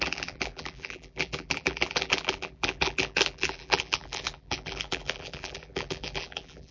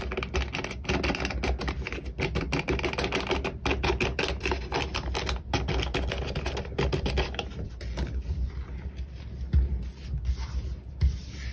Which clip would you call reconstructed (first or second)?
first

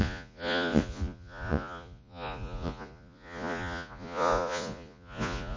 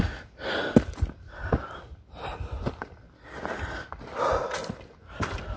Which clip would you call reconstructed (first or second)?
first